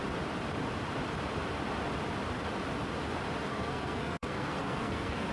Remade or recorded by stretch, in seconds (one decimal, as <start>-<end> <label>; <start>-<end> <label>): 0.0-3.5 recorded; 3.5-5.3 remade